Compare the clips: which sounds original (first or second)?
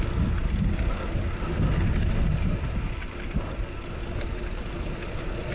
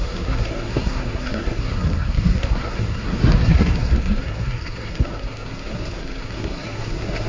first